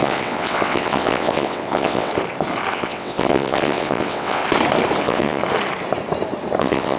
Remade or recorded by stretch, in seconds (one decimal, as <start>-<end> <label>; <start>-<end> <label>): 0.0-2.1 remade; 2.1-2.7 recorded; 2.7-4.4 remade; 4.4-5.0 recorded; 5.0-5.4 remade; 5.4-6.6 recorded; 6.6-7.0 remade